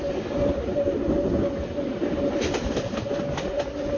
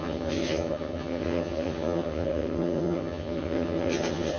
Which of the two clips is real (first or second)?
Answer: first